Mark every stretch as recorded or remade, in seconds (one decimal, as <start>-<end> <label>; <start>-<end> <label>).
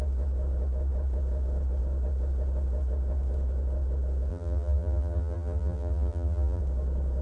0.0-4.3 recorded; 4.3-6.6 remade; 6.6-7.2 recorded